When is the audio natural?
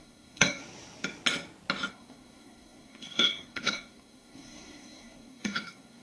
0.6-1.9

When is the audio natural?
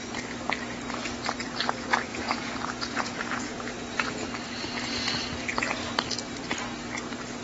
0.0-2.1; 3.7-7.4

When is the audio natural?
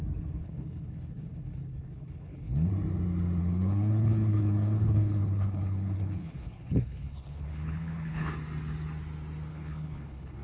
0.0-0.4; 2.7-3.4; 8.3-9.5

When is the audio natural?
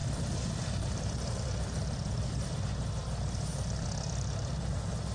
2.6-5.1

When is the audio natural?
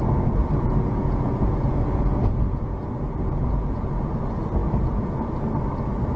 0.0-0.4; 4.1-4.6; 5.1-6.2